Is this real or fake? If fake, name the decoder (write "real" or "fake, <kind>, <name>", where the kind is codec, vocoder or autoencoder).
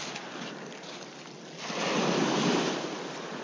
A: real